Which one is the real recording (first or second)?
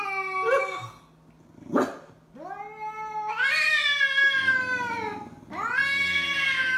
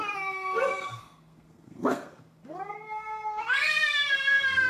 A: first